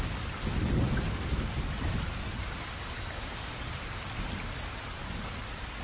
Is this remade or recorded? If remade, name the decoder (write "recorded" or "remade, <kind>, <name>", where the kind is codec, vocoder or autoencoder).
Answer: recorded